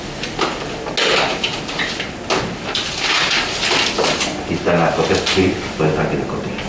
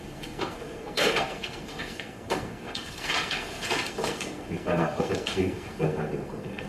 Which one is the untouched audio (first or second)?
first